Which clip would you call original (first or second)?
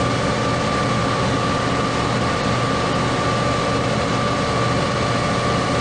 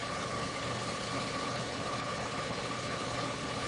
first